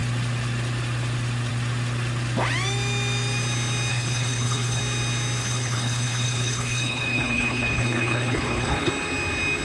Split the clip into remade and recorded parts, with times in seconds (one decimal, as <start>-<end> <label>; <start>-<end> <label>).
0.0-3.9 recorded; 3.9-4.8 remade; 4.8-5.4 recorded; 5.4-8.9 remade; 8.9-9.6 recorded